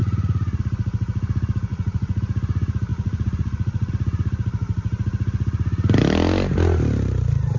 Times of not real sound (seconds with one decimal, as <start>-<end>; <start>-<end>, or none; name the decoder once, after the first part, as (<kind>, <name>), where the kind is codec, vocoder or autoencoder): 0.0-0.6 (vocoder, Vocos); 1.7-2.2; 2.9-3.9